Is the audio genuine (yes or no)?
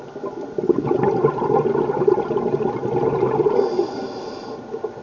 yes